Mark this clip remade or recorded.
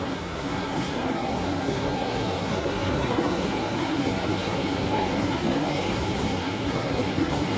remade